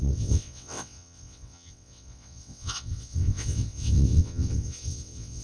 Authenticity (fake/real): fake